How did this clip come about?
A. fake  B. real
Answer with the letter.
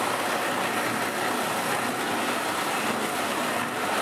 B